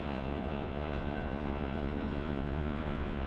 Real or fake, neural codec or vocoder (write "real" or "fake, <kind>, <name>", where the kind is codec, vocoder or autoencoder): fake, vocoder, Vocos